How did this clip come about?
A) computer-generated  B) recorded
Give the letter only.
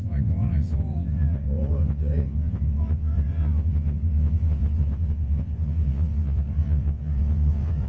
A